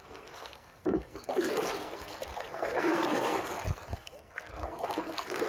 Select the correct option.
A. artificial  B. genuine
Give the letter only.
A